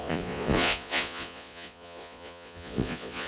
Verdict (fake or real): fake